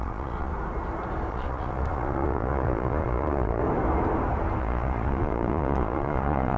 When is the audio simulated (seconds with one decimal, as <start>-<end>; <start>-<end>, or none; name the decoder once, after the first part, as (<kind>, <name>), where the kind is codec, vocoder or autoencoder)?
0.0-0.5 (vocoder, Vocos); 1.3-3.6; 4.6-6.6